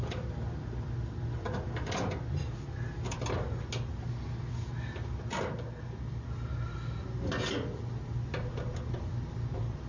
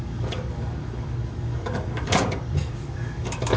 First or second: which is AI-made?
second